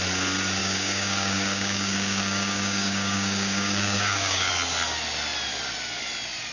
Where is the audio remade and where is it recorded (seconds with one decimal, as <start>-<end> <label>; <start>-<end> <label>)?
0.0-0.6 recorded; 0.6-4.5 remade; 4.5-6.5 recorded